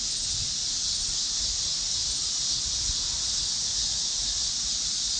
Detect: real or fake real